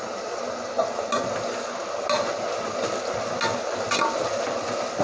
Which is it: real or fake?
real